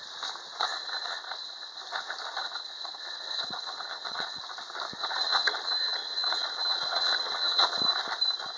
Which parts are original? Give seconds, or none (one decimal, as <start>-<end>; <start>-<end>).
0.0-0.7; 1.8-2.4; 4.4-5.0; 7.8-8.6